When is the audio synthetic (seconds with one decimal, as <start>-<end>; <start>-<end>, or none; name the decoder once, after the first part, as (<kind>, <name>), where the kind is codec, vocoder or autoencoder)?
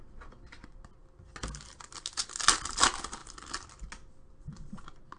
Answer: none